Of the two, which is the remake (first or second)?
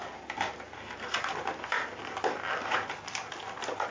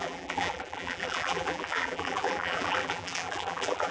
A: second